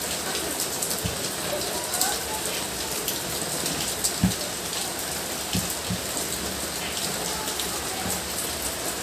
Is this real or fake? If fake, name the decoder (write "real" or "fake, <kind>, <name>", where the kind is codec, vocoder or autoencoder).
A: real